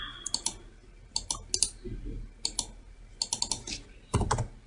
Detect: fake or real real